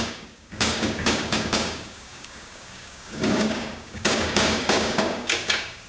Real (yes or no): no